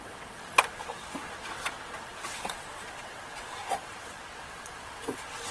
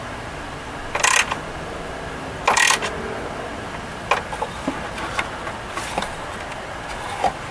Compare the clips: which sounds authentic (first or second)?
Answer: second